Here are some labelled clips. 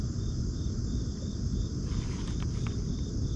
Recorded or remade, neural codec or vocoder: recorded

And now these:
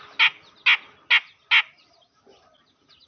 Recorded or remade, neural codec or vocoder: recorded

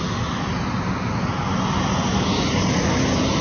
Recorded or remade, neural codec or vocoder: recorded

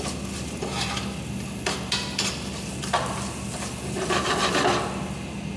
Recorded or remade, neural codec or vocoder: recorded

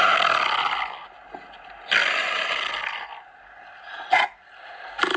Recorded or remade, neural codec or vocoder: recorded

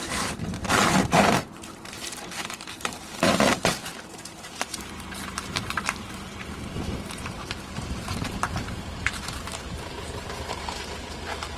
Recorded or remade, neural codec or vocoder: remade, vocoder, BigVGAN v2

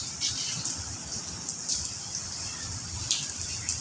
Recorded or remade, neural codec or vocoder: recorded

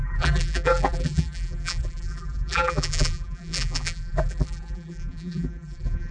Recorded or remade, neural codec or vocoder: remade, vocoder, BigVGAN v2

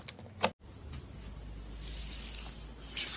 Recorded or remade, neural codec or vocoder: recorded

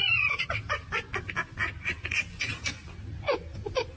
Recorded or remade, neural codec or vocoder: recorded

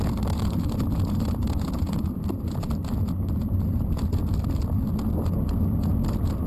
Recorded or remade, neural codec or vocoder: recorded